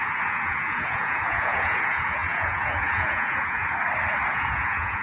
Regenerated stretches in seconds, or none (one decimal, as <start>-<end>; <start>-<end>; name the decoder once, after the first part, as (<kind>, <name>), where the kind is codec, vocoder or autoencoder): 0.0-3.6 (vocoder, Vocos); 4.3-5.0